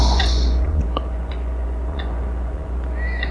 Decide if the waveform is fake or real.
fake